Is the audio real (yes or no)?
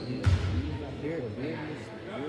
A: yes